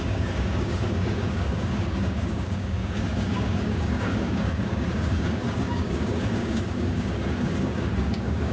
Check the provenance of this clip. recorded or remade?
remade